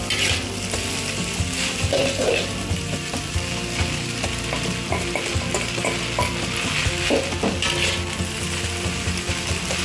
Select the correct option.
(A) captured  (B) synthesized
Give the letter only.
A